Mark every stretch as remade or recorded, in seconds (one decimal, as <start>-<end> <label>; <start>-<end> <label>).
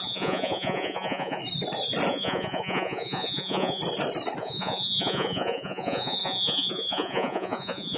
0.0-1.4 remade; 1.4-2.1 recorded; 2.1-3.8 remade; 3.8-4.4 recorded; 4.4-8.0 remade